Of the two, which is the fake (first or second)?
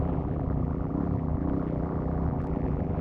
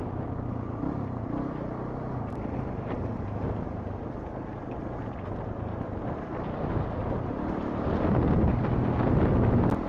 first